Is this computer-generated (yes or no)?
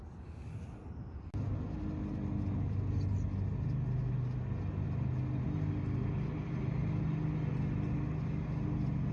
no